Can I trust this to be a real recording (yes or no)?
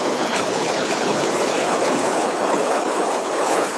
no